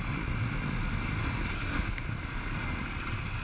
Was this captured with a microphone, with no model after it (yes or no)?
yes